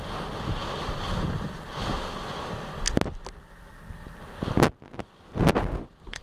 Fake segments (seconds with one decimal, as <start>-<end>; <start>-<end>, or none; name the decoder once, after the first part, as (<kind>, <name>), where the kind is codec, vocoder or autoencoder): none